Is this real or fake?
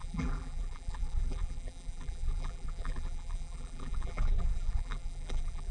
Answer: fake